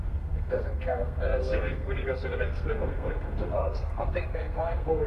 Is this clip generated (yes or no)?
yes